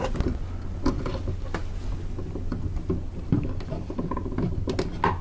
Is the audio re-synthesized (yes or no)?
no